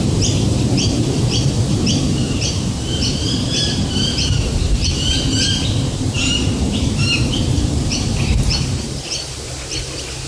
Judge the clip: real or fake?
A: fake